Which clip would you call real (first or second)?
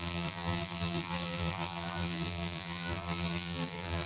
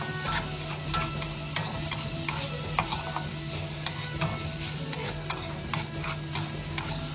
second